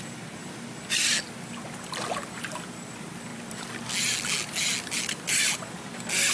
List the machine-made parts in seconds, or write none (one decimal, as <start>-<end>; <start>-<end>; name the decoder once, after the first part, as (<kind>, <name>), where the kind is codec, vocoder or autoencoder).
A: none